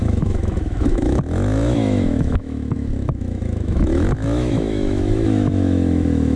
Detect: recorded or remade remade